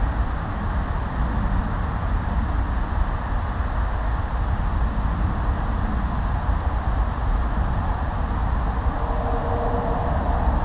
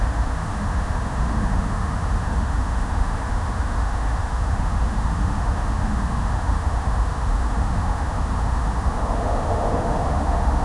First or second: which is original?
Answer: first